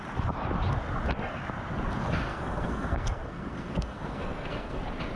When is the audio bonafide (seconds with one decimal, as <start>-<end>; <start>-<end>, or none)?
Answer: 0.0-2.3; 4.8-5.2